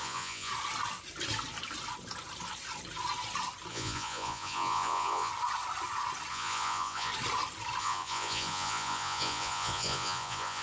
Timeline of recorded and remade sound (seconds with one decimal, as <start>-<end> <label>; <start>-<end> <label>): 0.0-0.5 remade; 0.5-3.7 recorded; 3.7-5.3 remade; 5.3-6.3 recorded; 6.3-7.1 remade; 7.1-7.8 recorded; 7.8-10.6 remade